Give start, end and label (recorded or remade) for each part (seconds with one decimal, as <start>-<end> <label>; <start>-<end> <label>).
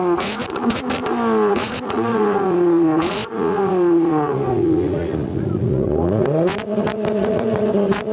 0.0-1.0 remade; 1.0-1.5 recorded; 1.5-8.1 remade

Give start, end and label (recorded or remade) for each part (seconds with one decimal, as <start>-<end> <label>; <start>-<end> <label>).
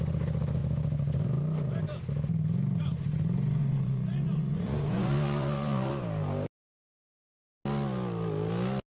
0.0-3.6 recorded; 3.6-5.9 remade; 5.9-8.9 recorded